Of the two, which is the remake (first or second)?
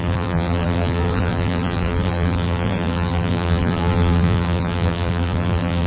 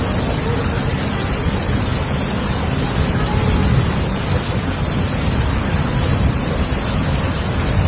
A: first